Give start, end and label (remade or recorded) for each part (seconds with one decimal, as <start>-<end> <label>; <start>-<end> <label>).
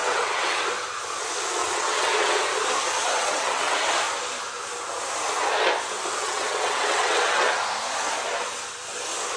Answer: 0.0-0.6 remade; 0.6-1.6 recorded; 1.6-2.4 remade; 2.4-3.0 recorded; 3.0-3.9 remade; 3.9-6.2 recorded; 6.2-7.6 remade; 7.6-9.4 recorded